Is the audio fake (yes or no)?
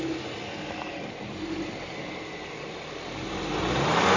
no